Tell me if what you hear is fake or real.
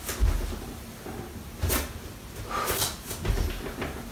real